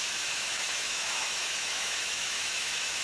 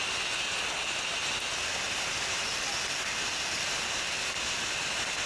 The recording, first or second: second